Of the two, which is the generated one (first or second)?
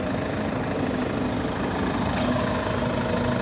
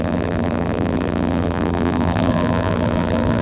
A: second